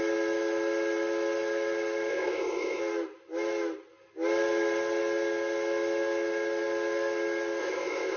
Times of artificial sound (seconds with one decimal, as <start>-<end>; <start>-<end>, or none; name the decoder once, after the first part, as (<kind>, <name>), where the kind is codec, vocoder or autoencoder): 2.1-2.8 (codec, ZipCodec); 7.6-8.2